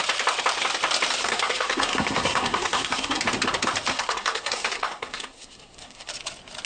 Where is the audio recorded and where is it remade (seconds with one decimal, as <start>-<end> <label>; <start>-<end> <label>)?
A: 0.0-1.2 recorded; 1.2-3.2 remade; 3.2-3.9 recorded; 3.9-6.1 remade; 6.1-6.7 recorded